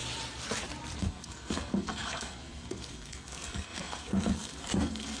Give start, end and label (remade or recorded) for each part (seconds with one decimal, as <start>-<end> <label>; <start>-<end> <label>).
0.0-1.0 recorded; 1.0-5.2 remade

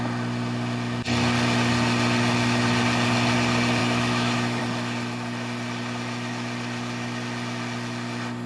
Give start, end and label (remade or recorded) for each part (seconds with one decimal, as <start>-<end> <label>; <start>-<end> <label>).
0.0-3.8 recorded; 3.8-4.6 remade; 4.6-8.5 recorded

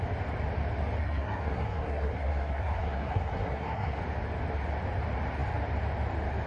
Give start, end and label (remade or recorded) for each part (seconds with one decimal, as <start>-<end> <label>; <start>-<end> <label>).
0.0-1.0 recorded; 1.0-4.0 remade; 4.0-6.5 recorded